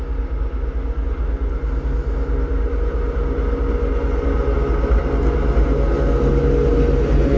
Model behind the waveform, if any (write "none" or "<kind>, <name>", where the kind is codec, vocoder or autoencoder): none